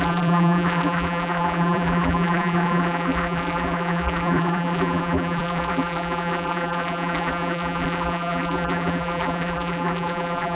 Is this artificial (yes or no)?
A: yes